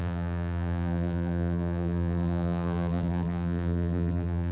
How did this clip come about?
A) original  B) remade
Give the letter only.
B